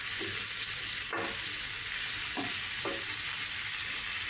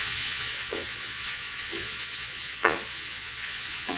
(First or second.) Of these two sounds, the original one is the first